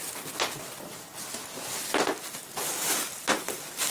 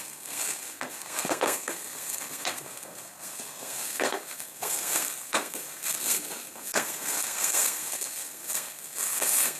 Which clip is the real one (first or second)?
first